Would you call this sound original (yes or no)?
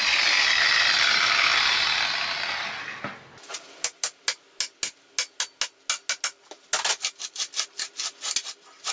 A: yes